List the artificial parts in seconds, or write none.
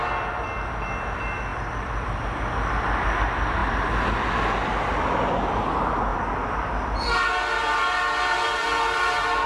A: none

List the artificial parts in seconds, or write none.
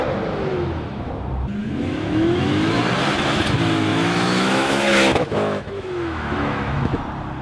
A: 0.5-1.1 (autoencoder, DAC-VAE); 1.6-2.8; 3.9-7.0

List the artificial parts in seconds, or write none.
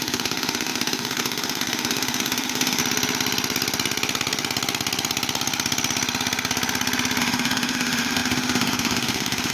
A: 0.0-2.8 (autoencoder, DAC-VAE); 7.2-9.5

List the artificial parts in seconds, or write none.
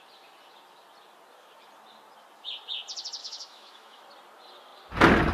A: 3.2-4.0 (autoencoder, DAC-VAE)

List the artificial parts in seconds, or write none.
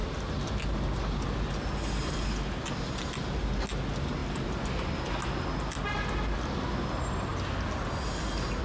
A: none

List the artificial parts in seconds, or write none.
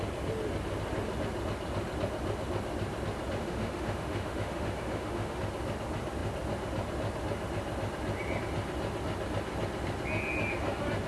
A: 3.4-5.4 (autoencoder, DAC-VAE)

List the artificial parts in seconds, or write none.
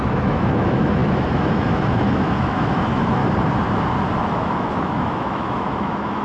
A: 0.0-3.2 (autoencoder, DAC-VAE); 4.2-6.2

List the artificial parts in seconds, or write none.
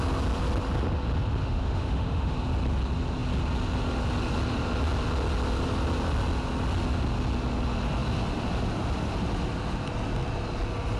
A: 1.4-2.4 (autoencoder, DAC-VAE)